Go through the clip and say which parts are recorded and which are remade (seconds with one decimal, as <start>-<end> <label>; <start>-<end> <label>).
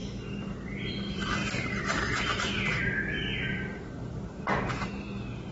0.0-1.4 recorded; 1.4-4.7 remade; 4.7-5.5 recorded